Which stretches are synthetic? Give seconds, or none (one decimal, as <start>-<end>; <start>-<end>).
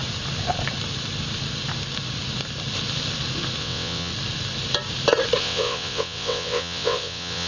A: 3.6-4.1; 5.4-7.5